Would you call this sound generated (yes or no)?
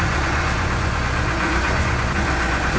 yes